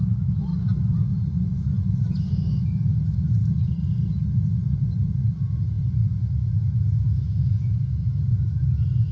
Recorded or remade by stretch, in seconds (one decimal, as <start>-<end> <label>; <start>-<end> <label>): 0.0-0.5 remade; 0.5-2.3 recorded; 2.3-3.4 remade; 3.4-5.6 recorded; 5.6-9.1 remade